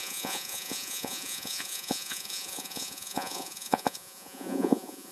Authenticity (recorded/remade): remade